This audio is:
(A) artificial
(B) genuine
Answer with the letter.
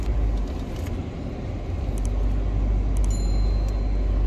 B